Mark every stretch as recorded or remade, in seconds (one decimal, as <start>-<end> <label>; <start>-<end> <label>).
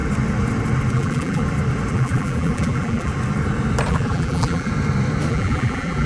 0.0-0.9 recorded; 0.9-1.4 remade; 1.4-1.9 recorded; 1.9-3.1 remade; 3.1-3.9 recorded; 3.9-4.7 remade; 4.7-5.3 recorded; 5.3-6.1 remade